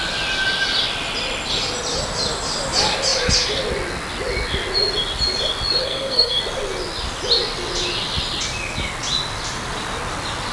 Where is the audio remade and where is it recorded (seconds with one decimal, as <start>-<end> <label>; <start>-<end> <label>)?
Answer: 0.0-5.8 recorded; 5.8-6.4 remade; 6.4-10.5 recorded